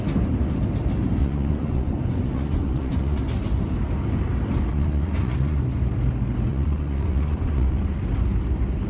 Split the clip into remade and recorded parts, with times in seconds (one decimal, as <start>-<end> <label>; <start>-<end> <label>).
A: 0.0-1.2 recorded; 1.2-3.2 remade; 3.2-4.7 recorded; 4.7-5.6 remade; 5.6-6.5 recorded; 6.5-8.0 remade; 8.0-8.9 recorded